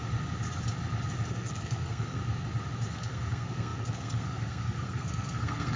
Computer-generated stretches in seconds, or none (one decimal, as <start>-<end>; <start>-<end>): 1.3-2.2; 2.9-5.8